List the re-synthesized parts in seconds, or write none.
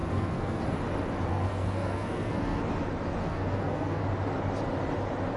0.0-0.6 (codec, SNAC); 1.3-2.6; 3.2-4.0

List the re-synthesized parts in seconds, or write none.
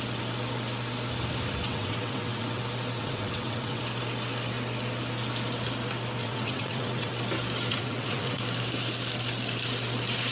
1.6-2.6 (vocoder, WaveNeXt); 3.0-3.8; 6.2-7.1; 7.7-8.4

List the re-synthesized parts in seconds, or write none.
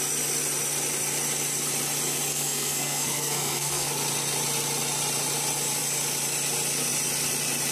2.3-3.9 (codec, SNAC)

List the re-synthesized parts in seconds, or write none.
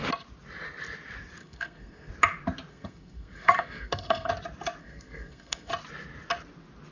1.4-2.1 (codec, SNAC); 2.7-4.3; 4.8-5.7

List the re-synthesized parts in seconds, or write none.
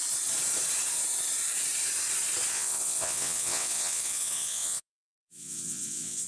2.5-6.3 (vocoder, WaveNeXt)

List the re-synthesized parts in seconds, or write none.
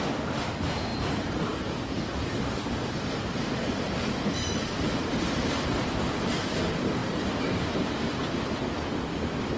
0.9-5.6 (vocoder, BigVGAN v2)